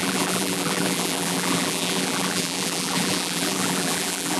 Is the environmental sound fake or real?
fake